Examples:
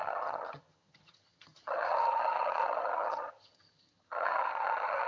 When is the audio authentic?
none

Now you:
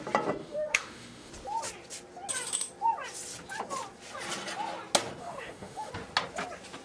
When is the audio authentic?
0.0-0.4; 1.3-5.2; 5.9-6.8

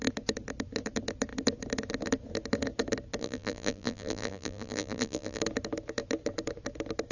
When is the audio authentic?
0.0-3.2; 5.4-7.1

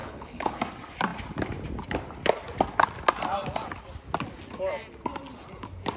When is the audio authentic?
0.6-6.0

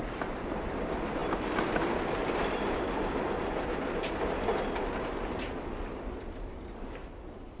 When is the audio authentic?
0.0-7.6

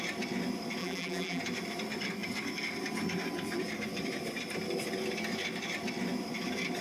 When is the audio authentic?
0.0-0.8; 1.4-6.8

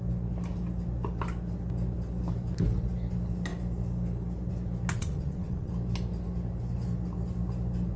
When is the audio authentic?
0.0-4.9; 5.7-8.0